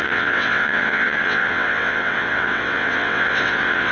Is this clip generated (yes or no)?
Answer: yes